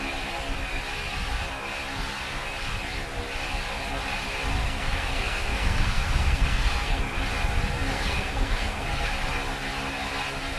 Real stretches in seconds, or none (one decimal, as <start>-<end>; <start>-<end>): 0.0-4.6; 7.0-7.9; 9.1-10.6